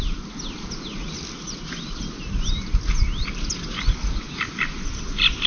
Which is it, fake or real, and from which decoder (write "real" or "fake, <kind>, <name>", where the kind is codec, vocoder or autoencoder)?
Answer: real